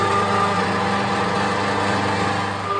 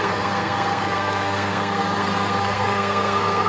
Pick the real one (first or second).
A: first